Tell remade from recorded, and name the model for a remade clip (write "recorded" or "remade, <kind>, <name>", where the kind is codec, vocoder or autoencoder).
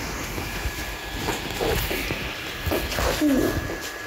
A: recorded